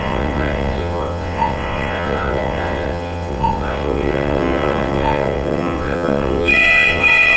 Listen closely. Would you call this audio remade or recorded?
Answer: remade